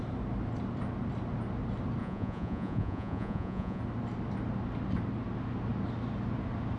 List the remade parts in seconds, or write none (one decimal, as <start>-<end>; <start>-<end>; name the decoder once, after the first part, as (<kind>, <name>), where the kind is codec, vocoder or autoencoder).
2.0-3.8 (vocoder, Vocos)